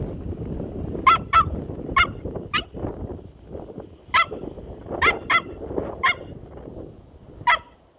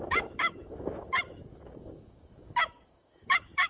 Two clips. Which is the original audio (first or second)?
first